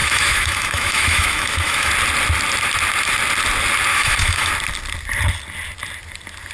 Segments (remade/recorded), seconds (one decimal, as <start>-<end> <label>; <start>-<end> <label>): 0.0-1.9 remade; 1.9-3.9 recorded; 3.9-4.5 remade; 4.5-6.5 recorded